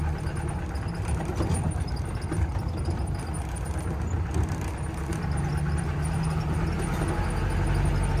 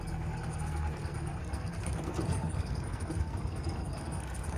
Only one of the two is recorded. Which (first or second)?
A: first